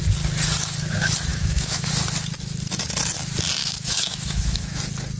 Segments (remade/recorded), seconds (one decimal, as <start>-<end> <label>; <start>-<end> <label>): 0.0-1.3 recorded; 1.3-1.9 remade; 1.9-3.6 recorded; 3.6-4.8 remade; 4.8-5.2 recorded